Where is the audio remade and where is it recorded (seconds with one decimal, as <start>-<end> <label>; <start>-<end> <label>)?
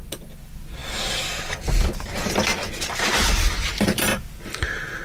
0.0-5.0 remade